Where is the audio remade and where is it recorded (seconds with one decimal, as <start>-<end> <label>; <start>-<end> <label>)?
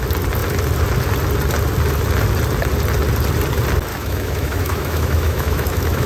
0.0-3.9 recorded; 3.9-6.1 remade